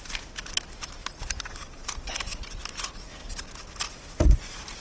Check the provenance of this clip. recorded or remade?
recorded